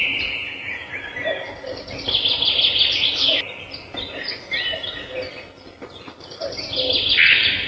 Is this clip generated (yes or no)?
no